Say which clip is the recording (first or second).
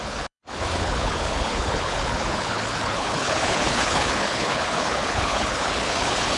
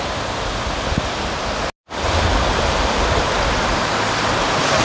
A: second